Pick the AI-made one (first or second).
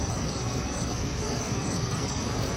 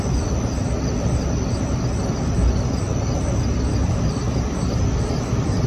first